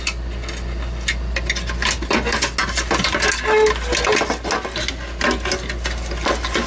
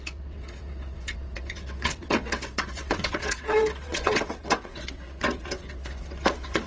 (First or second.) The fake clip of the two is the second